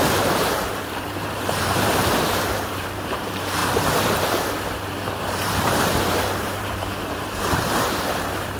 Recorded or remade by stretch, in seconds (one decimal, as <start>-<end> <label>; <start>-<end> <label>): 0.0-3.6 remade; 3.6-5.2 recorded; 5.2-8.6 remade